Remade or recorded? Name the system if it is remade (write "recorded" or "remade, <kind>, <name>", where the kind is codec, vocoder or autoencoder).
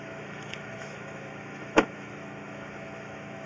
remade, autoencoder, DAC-VAE